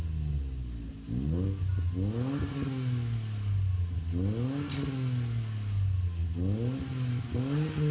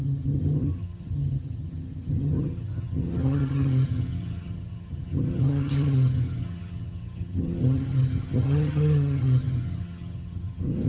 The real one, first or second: first